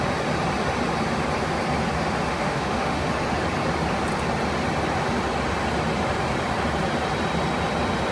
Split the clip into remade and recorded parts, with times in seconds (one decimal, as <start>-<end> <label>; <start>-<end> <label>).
0.0-2.3 recorded; 2.3-3.1 remade; 3.1-8.1 recorded